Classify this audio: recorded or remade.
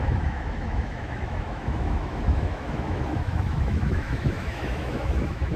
remade